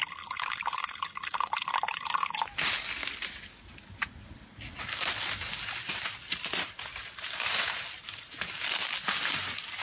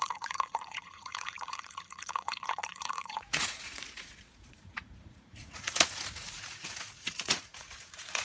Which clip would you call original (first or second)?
first